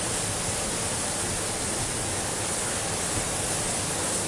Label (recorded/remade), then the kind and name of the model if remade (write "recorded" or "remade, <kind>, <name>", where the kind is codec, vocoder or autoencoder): recorded